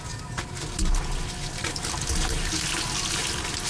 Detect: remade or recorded recorded